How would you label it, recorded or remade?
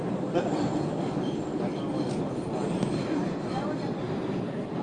recorded